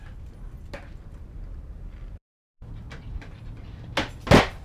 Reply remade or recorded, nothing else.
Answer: recorded